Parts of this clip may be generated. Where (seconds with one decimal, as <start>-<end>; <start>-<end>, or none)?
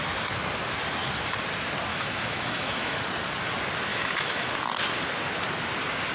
1.9-3.0; 3.9-4.5